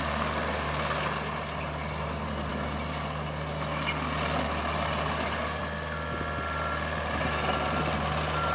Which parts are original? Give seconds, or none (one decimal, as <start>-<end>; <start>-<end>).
0.0-8.5